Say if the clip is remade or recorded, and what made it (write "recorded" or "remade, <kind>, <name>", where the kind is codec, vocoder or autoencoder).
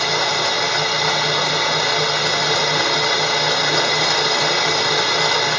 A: recorded